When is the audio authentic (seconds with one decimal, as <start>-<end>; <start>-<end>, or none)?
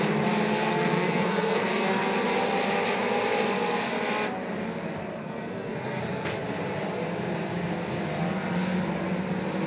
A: 0.0-0.5; 2.1-5.2; 6.3-9.7